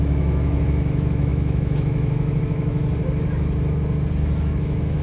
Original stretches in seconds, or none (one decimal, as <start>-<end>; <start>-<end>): 2.8-4.6